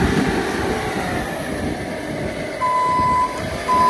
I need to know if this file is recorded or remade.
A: recorded